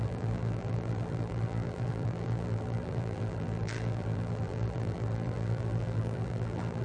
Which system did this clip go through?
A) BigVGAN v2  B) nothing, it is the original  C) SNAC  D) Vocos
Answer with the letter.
A